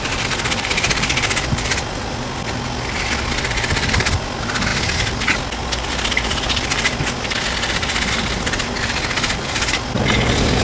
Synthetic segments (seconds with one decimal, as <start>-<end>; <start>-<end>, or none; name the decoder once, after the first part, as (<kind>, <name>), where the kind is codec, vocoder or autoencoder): none